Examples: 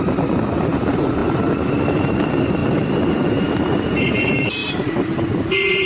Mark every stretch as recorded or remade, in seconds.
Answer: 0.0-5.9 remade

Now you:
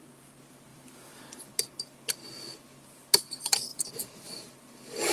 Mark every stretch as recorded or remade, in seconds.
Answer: 0.0-0.7 recorded; 0.7-1.4 remade; 1.4-3.7 recorded; 3.7-4.3 remade; 4.3-5.1 recorded

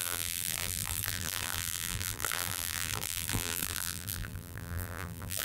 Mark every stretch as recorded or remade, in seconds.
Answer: 0.0-5.4 remade

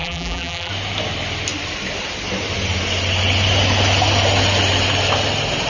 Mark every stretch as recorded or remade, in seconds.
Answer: 0.0-0.7 remade; 0.7-5.7 recorded

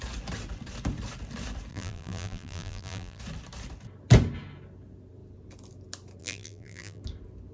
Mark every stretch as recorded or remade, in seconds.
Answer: 0.0-1.7 recorded; 1.7-3.2 remade; 3.2-6.2 recorded; 6.2-7.0 remade; 7.0-7.5 recorded